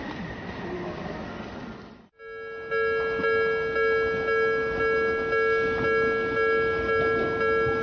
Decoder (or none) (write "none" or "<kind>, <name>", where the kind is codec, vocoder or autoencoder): none